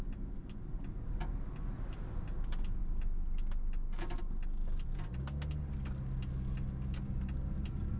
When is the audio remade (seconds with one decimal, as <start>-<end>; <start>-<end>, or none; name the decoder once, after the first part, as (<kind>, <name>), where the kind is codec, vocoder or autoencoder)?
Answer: none